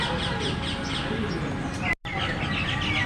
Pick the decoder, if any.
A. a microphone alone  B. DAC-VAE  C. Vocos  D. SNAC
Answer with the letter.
A